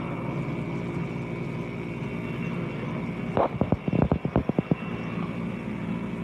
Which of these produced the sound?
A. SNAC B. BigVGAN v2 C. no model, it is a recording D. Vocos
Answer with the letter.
C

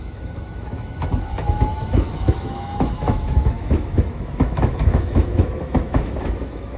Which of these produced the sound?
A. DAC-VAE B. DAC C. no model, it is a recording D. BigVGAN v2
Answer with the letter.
A